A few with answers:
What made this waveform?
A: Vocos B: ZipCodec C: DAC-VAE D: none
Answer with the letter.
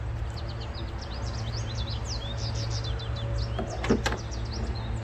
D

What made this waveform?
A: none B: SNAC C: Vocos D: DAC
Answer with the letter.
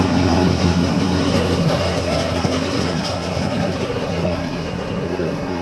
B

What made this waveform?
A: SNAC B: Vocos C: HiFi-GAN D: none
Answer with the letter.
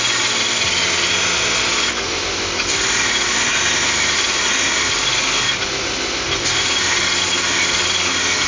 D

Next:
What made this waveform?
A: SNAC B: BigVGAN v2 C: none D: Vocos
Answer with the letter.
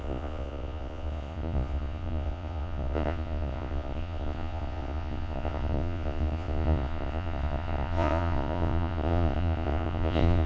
D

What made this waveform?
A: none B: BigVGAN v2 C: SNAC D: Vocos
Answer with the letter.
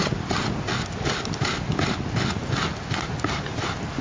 A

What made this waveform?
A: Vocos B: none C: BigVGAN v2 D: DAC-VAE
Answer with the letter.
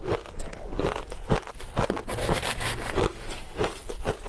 B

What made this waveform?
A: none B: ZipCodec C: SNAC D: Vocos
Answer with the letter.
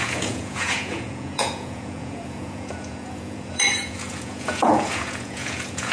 D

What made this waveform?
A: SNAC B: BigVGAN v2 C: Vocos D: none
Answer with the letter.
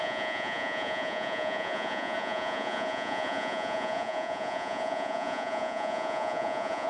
C